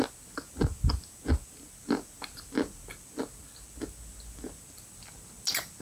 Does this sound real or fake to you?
real